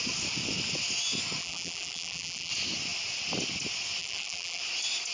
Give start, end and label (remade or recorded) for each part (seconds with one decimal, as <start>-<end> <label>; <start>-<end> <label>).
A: 0.0-1.4 recorded; 1.4-2.5 remade; 2.5-4.0 recorded; 4.0-4.6 remade; 4.6-5.1 recorded